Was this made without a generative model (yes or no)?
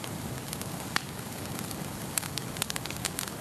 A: no